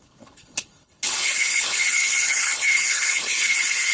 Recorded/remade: remade